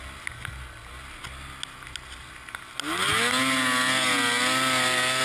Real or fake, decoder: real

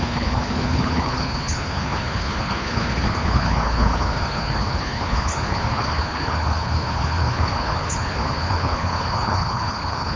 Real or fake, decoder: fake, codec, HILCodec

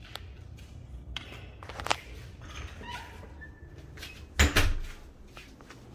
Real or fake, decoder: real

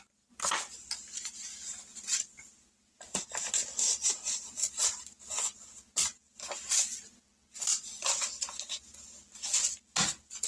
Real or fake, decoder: real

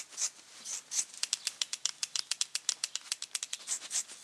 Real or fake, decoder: real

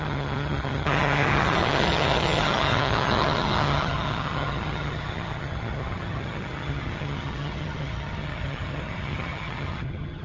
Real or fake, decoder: fake, vocoder, HiFi-GAN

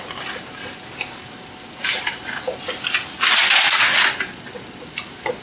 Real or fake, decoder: real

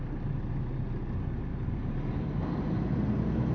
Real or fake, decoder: real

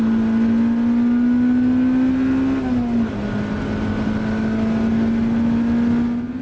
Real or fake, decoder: real